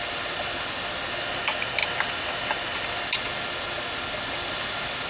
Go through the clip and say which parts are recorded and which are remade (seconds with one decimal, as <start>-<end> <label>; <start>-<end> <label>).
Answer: 0.0-5.1 recorded